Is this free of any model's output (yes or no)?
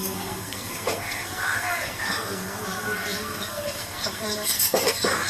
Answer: no